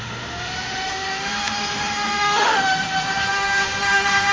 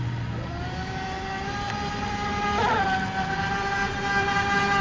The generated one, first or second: first